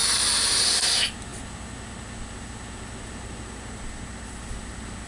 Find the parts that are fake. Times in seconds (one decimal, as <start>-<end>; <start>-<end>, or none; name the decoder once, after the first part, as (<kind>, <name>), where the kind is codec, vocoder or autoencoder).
none